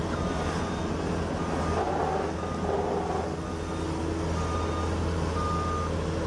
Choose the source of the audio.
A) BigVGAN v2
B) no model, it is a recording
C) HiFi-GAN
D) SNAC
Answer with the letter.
B